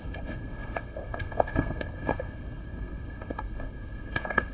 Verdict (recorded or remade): remade